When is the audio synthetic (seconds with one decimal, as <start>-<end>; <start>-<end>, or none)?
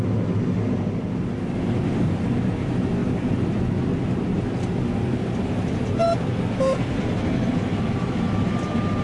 6.0-6.8